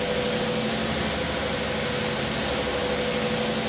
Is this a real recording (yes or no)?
yes